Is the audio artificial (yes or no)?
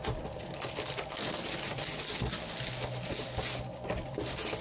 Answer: no